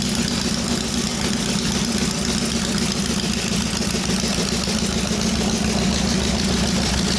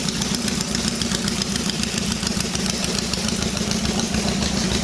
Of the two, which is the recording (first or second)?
first